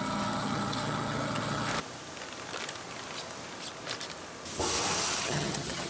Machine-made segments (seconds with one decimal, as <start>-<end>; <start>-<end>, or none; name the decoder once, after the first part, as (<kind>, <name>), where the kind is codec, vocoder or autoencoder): 0.0-1.7 (vocoder, HiFi-GAN); 5.2-5.9